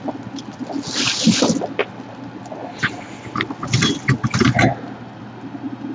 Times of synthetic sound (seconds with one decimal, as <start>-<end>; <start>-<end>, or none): none